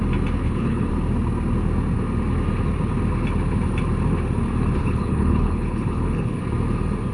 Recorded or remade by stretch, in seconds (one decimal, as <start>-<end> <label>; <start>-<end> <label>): 0.0-0.4 recorded; 0.4-0.9 remade; 0.9-4.8 recorded; 4.8-6.4 remade; 6.4-7.1 recorded